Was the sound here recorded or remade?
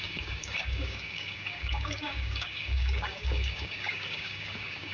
remade